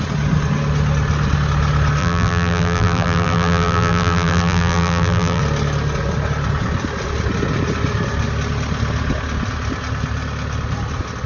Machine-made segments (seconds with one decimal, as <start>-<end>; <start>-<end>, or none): 2.0-5.4

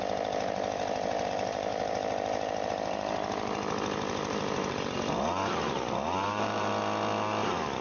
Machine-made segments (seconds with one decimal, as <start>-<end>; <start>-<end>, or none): 0.0-6.7

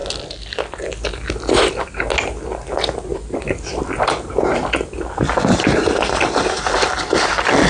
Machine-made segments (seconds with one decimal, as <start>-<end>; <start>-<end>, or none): 3.1-7.7

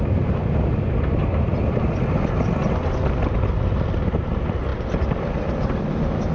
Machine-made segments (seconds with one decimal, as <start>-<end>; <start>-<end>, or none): none

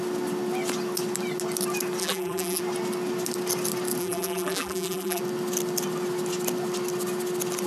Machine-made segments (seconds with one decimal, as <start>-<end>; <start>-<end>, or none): 2.0-2.6; 4.0-5.2